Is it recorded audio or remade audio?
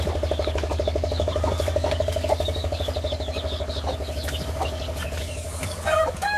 remade